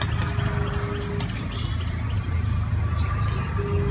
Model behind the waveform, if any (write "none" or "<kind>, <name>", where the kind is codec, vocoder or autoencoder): none